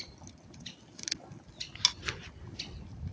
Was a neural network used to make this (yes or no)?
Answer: no